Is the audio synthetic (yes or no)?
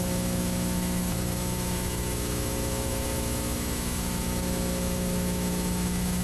yes